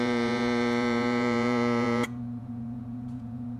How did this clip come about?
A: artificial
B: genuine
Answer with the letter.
A